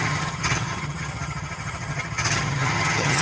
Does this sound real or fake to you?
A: fake